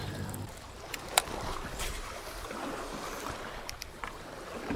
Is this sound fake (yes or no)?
yes